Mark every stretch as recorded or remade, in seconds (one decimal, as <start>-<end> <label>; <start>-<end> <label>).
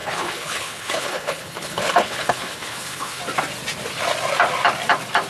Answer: 0.0-3.2 remade; 3.2-5.3 recorded